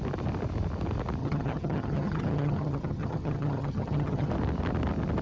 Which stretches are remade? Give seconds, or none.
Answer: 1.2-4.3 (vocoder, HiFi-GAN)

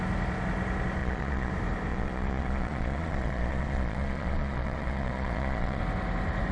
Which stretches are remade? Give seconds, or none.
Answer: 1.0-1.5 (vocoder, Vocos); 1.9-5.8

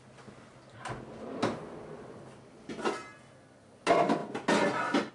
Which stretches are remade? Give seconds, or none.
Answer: none

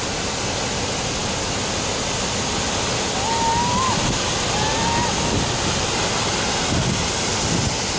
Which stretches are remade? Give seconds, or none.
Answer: none

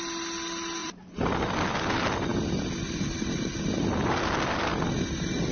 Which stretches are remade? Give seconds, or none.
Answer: 0.8-1.5 (vocoder, BigVGAN v2)

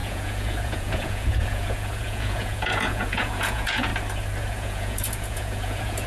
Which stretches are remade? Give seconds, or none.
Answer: 0.0-3.9 (vocoder, Vocos); 4.4-6.1

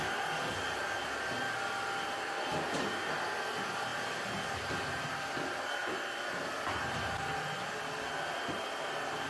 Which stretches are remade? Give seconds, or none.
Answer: none